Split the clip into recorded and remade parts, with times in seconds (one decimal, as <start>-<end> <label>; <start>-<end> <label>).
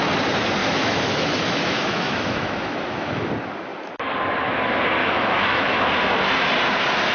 0.0-0.6 recorded; 0.6-3.3 remade; 3.3-5.0 recorded; 5.0-5.9 remade; 5.9-7.1 recorded